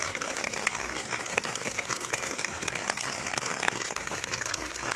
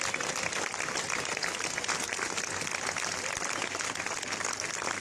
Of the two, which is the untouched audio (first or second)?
second